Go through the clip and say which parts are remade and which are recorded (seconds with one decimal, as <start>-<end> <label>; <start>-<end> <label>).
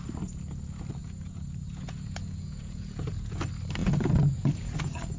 0.0-1.0 recorded; 1.0-3.4 remade; 3.4-3.8 recorded; 3.8-4.5 remade; 4.5-5.2 recorded